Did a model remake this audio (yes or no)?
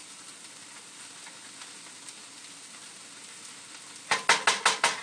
no